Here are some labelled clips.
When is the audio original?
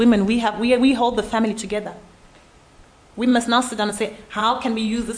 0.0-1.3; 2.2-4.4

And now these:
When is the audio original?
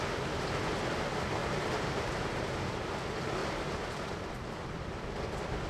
0.0-1.4; 2.8-3.4; 4.8-5.7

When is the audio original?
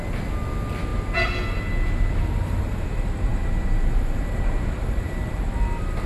0.0-3.3; 5.4-6.1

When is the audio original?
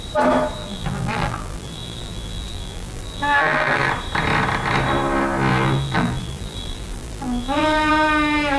0.0-0.6; 3.9-5.5; 7.9-8.6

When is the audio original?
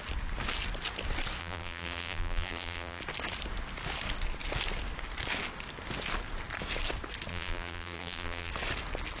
0.0-1.4; 3.0-7.3; 8.5-9.2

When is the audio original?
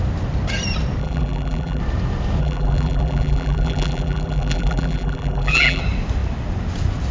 0.0-1.0; 1.8-2.4; 5.8-7.1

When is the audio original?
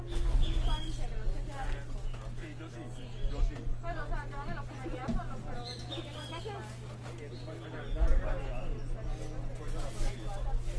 0.0-10.8